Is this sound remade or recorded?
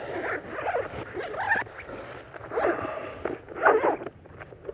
recorded